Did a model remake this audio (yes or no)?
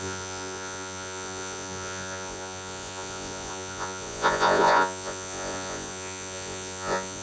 yes